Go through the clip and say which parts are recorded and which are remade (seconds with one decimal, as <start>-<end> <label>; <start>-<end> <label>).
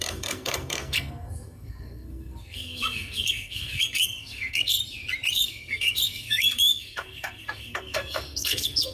0.0-4.8 remade; 4.8-5.3 recorded; 5.3-8.9 remade